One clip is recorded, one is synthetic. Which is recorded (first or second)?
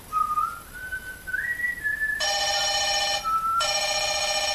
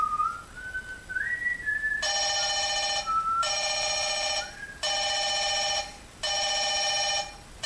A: second